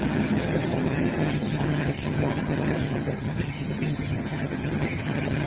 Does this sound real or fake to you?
fake